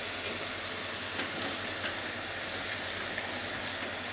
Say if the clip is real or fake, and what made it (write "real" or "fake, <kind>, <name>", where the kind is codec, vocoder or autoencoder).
real